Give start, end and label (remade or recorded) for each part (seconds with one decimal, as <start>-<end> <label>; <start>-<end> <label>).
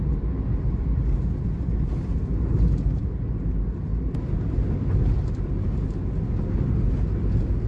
0.0-7.7 recorded